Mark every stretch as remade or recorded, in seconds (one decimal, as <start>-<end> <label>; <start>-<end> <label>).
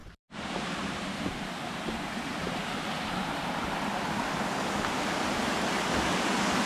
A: 0.0-3.4 remade; 3.4-6.7 recorded